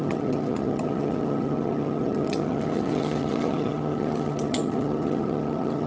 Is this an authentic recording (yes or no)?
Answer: no